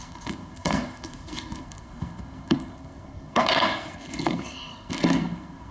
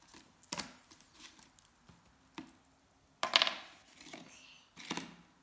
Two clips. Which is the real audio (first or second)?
second